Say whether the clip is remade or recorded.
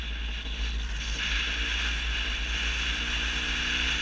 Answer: recorded